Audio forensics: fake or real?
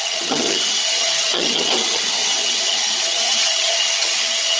fake